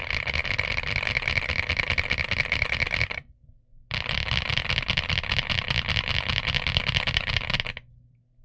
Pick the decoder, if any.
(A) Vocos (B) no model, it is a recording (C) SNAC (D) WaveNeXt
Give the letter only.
B